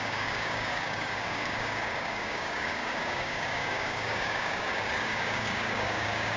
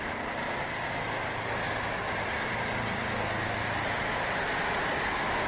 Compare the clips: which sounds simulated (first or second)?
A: first